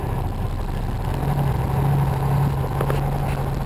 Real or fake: real